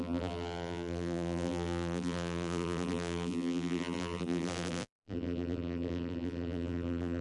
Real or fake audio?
fake